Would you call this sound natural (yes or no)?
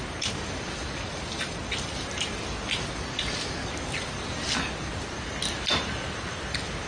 yes